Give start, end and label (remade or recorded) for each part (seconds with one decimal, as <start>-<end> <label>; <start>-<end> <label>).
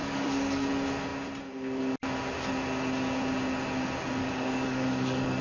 0.0-0.7 remade; 0.7-4.2 recorded; 4.2-5.4 remade